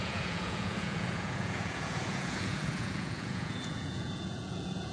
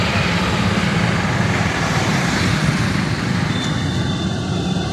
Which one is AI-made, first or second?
first